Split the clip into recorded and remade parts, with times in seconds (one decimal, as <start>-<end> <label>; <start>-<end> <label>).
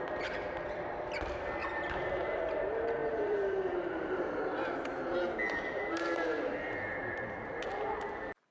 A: 0.0-1.6 recorded; 1.6-2.1 remade; 2.1-3.0 recorded; 3.0-6.6 remade; 6.6-8.5 recorded